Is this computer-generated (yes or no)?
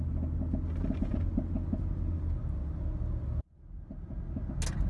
no